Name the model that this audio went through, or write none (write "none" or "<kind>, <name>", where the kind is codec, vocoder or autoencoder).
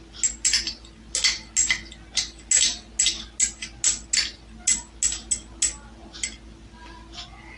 none